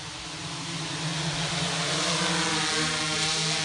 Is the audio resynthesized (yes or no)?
no